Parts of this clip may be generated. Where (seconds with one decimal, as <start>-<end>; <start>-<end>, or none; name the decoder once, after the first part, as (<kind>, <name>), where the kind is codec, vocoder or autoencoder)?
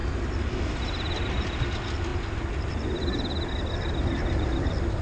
none